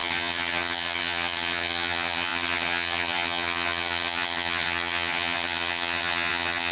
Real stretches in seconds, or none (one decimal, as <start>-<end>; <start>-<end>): none